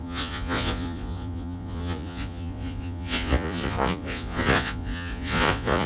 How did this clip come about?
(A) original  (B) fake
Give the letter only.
B